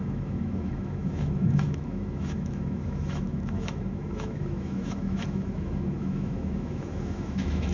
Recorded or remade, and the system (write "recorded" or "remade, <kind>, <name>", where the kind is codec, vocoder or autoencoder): remade, autoencoder, DAC-VAE